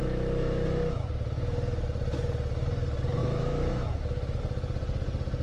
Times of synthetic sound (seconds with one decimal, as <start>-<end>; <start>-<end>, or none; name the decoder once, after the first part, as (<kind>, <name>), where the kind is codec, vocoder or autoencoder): 0.0-1.1 (autoencoder, DAC-VAE); 3.2-4.4